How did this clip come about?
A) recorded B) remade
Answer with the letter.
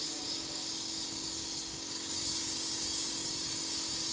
B